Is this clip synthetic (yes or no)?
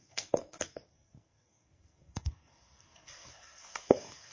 yes